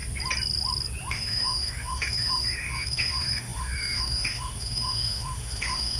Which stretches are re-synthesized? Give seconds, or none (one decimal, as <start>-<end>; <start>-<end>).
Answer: 1.1-6.0